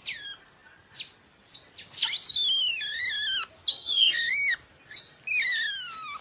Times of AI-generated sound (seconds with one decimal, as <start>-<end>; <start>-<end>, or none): 3.7-4.3